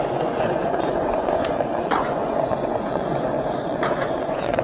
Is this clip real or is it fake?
fake